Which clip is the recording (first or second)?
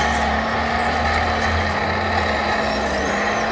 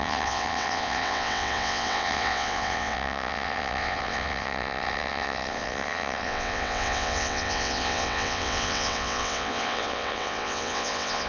first